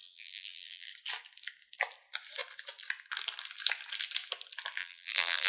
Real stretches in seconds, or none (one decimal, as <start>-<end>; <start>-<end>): 0.9-4.8

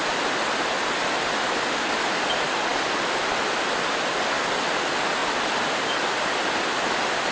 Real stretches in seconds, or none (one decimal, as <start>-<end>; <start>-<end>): 0.0-7.3

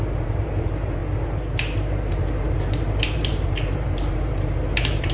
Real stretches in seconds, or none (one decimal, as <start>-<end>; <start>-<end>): 1.0-2.1

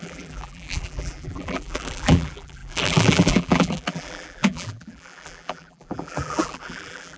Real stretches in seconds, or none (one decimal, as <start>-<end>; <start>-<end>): none

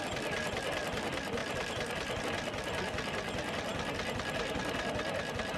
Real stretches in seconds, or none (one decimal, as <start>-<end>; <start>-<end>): 0.0-1.4; 2.2-5.6

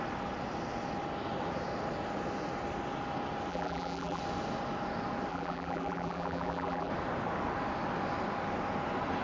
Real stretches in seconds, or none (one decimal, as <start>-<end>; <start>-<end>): 0.0-3.5; 4.2-5.3; 6.9-9.2

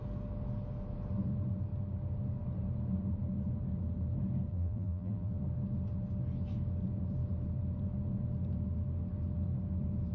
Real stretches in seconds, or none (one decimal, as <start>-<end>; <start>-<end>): 0.0-4.5; 5.3-10.1

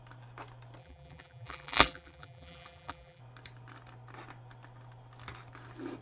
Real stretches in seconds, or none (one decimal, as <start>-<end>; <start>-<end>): 0.0-0.8; 3.2-6.0